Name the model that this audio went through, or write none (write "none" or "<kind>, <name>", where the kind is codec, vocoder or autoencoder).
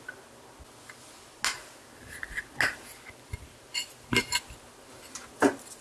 none